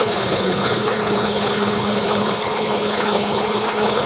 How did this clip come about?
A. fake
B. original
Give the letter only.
A